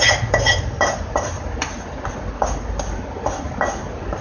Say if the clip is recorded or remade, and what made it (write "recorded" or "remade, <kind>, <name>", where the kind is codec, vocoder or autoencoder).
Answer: recorded